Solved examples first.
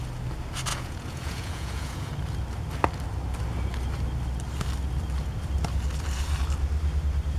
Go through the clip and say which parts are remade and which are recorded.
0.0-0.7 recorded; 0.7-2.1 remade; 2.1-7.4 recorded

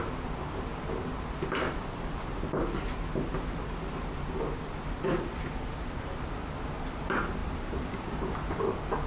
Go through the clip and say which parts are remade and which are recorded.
0.0-7.4 recorded; 7.4-8.1 remade; 8.1-9.1 recorded

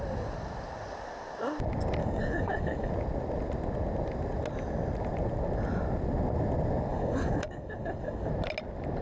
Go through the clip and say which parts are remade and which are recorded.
0.0-2.0 recorded; 2.0-2.9 remade; 2.9-6.9 recorded; 6.9-8.3 remade; 8.3-9.0 recorded